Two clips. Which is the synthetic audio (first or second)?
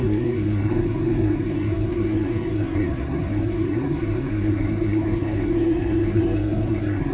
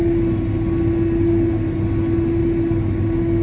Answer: first